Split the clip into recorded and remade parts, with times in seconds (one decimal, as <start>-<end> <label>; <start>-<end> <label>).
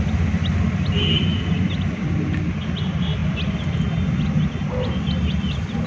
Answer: 0.0-5.9 recorded